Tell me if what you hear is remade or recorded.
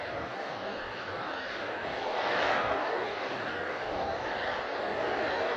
remade